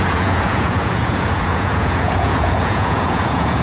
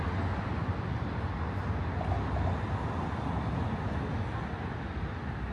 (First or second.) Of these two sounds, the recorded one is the second